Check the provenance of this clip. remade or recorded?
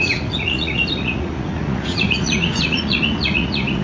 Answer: remade